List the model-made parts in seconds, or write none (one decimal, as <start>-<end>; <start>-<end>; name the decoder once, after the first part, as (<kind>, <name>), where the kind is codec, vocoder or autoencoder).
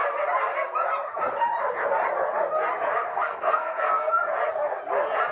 3.1-4.1 (codec, SNAC)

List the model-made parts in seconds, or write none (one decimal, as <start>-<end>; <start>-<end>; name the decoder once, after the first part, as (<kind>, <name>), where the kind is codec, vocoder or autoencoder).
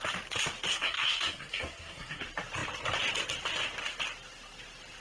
0.7-2.2 (codec, SNAC)